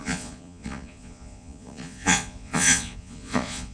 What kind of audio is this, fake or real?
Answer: fake